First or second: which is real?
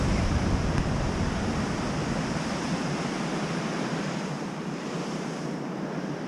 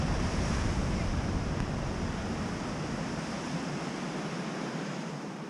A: second